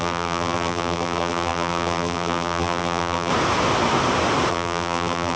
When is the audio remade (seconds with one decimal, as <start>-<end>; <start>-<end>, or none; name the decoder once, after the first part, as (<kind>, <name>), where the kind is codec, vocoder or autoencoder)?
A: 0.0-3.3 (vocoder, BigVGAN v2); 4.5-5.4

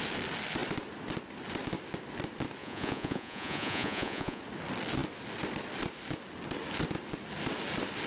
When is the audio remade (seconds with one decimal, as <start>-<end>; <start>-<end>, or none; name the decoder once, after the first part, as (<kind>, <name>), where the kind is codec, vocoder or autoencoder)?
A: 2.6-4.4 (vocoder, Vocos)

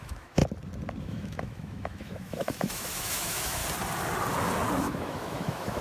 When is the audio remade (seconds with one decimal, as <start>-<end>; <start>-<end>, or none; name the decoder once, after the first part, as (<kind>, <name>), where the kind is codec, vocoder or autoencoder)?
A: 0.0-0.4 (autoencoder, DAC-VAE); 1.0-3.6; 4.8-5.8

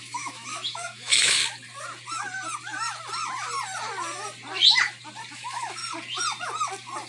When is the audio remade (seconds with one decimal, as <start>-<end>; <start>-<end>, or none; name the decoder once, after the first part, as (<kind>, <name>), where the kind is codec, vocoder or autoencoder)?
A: 0.0-1.4 (autoencoder, DAC-VAE); 5.3-5.8

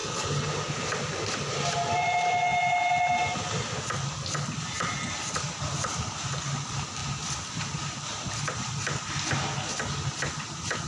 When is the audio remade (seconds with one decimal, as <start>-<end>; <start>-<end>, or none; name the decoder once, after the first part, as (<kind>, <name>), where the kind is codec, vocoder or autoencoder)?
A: 0.0-0.5 (codec, HILCodec)

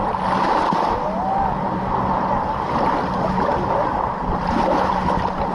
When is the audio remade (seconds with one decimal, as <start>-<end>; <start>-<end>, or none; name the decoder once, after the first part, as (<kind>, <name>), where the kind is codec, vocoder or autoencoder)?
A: none

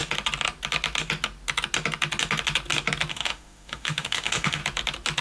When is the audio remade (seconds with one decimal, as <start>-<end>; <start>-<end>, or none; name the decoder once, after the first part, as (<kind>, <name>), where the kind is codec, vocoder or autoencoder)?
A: 3.1-4.6 (autoencoder, DAC-VAE)